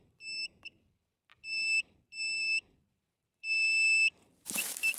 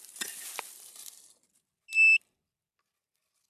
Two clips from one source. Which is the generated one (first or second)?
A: first